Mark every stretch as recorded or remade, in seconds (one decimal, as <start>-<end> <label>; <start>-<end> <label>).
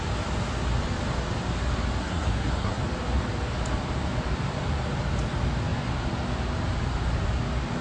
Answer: 0.0-2.0 recorded; 2.0-2.8 remade; 2.8-7.8 recorded